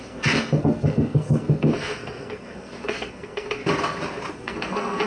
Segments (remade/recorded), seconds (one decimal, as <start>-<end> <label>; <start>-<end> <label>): 0.0-3.6 remade; 3.6-4.3 recorded; 4.3-5.1 remade